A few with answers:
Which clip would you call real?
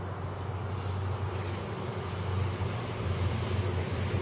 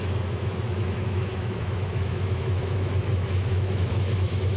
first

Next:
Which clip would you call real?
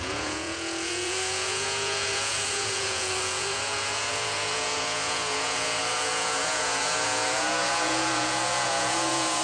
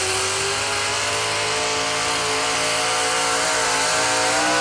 second